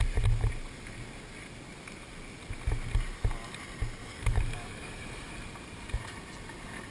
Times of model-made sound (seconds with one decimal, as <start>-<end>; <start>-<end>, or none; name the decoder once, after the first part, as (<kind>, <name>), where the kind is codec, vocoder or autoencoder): 4.0-5.3 (codec, DAC)